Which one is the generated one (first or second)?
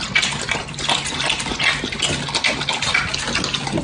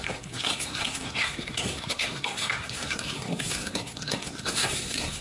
second